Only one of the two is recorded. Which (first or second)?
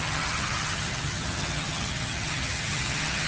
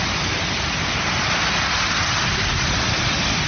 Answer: second